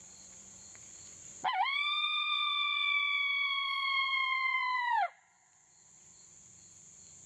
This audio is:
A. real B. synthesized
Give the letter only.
B